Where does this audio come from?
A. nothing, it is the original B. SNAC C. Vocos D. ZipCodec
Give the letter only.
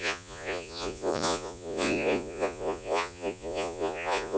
C